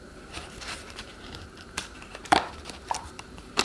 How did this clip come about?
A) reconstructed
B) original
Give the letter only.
A